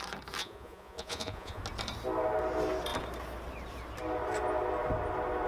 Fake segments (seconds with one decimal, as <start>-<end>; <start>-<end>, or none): 0.4-1.6